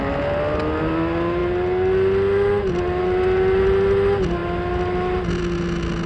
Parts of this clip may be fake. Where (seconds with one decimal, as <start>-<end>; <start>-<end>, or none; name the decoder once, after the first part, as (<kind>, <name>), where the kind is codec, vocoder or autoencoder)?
none